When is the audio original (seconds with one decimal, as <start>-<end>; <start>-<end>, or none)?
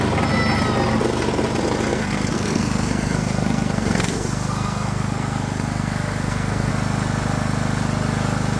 0.0-1.9; 6.7-8.6